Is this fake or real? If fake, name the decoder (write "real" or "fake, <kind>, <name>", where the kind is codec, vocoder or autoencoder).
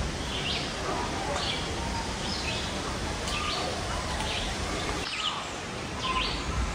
real